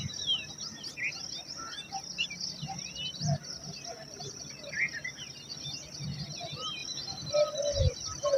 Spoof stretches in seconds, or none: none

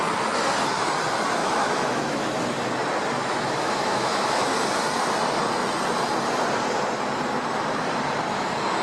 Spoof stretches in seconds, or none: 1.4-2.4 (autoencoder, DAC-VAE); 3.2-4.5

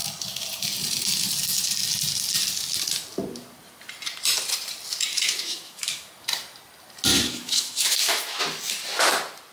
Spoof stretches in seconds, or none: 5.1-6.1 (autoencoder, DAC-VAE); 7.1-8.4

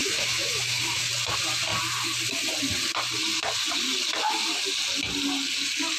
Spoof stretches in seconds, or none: 0.0-1.1 (autoencoder, DAC-VAE)

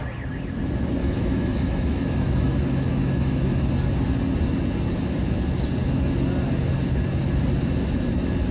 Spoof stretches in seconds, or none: 1.0-3.7 (autoencoder, DAC-VAE)

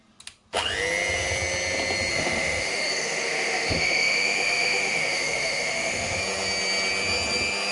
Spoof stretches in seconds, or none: 2.1-6.2 (autoencoder, DAC-VAE)

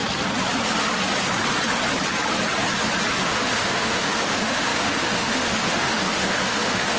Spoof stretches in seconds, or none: 3.2-7.0 (autoencoder, DAC-VAE)

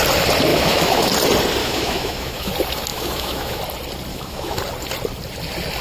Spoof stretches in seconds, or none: 0.5-1.1 (autoencoder, DAC-VAE); 1.6-2.5; 2.9-3.6; 4.1-4.6